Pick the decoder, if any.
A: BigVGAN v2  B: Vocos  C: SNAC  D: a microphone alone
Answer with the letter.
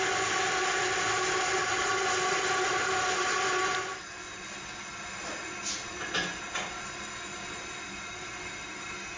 D